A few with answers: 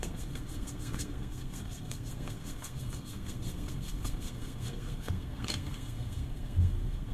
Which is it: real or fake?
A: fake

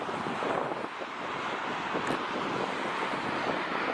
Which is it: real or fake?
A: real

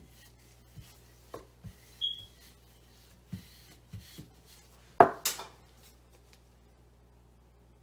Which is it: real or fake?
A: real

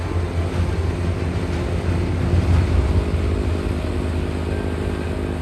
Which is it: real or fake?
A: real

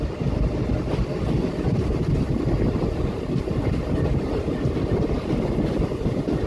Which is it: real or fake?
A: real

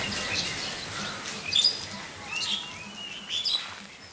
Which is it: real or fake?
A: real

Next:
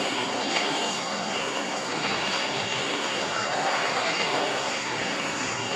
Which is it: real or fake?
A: fake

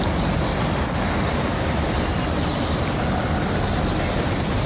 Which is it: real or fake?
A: real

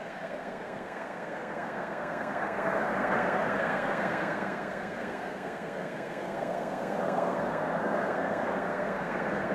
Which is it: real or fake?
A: fake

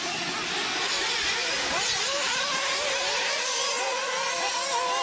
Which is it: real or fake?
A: real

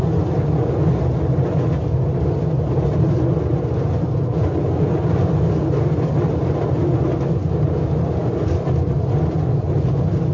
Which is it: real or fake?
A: real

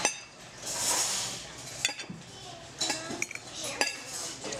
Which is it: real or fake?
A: real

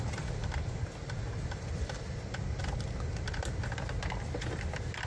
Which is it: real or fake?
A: real